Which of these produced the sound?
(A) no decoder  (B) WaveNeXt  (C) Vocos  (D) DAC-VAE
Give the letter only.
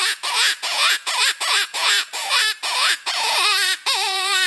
C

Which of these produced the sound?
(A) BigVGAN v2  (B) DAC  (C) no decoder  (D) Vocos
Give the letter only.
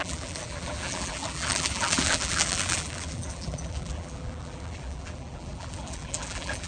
A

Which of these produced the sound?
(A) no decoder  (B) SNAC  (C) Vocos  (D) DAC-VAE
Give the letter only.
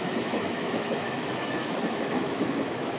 D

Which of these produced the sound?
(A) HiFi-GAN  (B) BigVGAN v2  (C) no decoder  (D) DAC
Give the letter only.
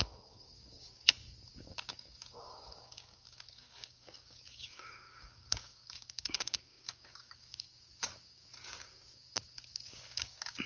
D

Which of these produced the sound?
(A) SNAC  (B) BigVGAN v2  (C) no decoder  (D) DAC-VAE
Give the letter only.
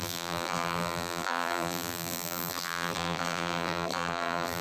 B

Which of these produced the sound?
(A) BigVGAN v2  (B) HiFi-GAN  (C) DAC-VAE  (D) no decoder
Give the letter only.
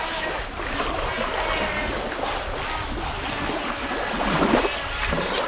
D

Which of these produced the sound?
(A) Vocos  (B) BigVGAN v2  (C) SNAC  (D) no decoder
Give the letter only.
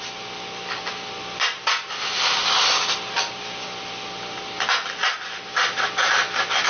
D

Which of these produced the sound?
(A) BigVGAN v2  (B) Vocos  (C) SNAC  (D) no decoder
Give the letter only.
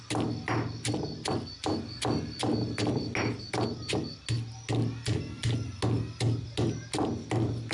D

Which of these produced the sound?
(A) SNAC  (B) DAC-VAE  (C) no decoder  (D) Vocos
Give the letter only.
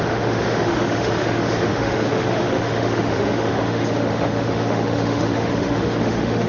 B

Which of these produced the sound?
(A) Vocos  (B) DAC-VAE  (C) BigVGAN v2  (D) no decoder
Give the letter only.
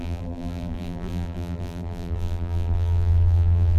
C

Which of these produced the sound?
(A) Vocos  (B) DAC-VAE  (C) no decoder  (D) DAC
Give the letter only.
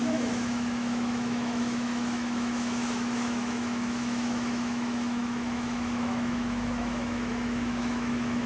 B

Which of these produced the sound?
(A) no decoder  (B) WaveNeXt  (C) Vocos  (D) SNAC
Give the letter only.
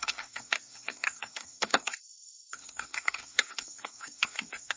D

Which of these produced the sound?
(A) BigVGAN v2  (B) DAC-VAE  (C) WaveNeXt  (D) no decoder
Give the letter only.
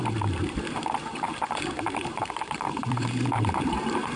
A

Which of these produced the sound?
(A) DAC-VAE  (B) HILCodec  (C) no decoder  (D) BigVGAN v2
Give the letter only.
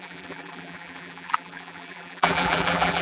D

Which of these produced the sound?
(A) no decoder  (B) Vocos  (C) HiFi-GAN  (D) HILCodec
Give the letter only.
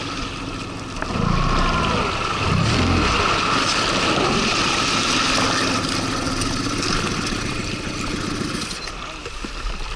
A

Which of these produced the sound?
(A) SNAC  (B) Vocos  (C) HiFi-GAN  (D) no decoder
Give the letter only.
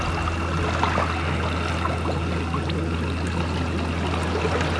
D